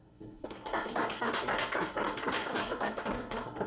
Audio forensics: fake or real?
fake